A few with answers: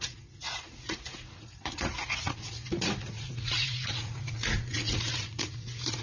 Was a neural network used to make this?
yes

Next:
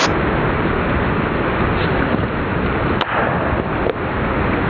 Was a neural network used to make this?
no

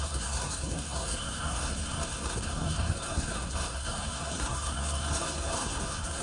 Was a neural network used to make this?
yes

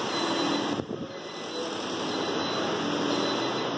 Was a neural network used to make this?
no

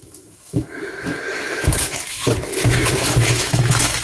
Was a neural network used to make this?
yes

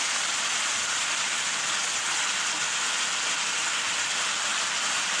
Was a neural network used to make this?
yes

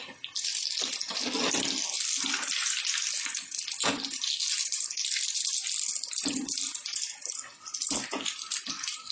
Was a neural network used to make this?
no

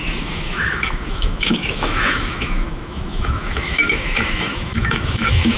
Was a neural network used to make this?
yes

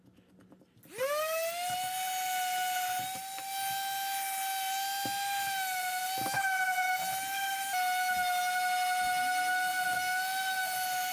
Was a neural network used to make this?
no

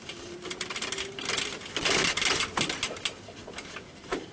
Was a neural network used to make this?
no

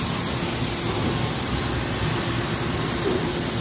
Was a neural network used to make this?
no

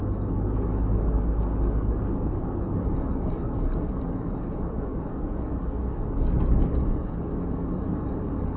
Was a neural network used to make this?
yes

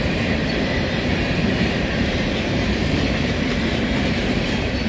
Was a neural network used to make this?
yes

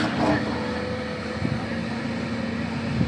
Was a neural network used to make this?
no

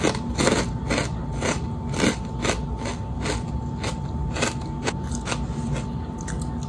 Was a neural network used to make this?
no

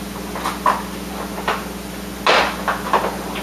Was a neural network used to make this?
no